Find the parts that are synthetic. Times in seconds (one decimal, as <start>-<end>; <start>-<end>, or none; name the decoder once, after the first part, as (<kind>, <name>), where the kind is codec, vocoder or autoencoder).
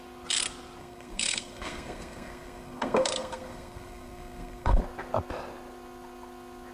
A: 0.8-4.8 (codec, SNAC)